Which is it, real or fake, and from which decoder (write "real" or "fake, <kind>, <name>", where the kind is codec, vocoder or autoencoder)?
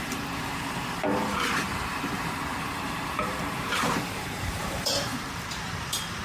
fake, vocoder, BigVGAN v2